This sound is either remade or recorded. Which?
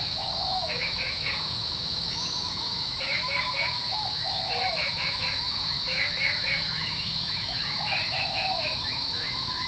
remade